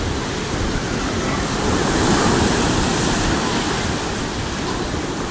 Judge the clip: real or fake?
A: real